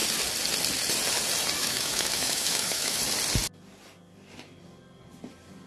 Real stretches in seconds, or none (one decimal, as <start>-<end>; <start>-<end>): 0.0-1.6; 3.0-5.7